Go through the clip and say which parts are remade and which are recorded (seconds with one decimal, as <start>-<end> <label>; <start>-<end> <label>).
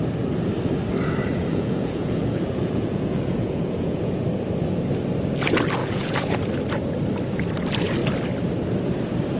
0.0-1.3 recorded; 1.3-4.1 remade; 4.1-5.8 recorded; 5.8-6.4 remade; 6.4-9.4 recorded